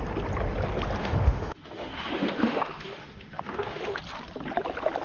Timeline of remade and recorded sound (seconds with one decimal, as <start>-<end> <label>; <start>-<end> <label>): 0.0-1.0 recorded; 1.0-4.0 remade; 4.0-5.0 recorded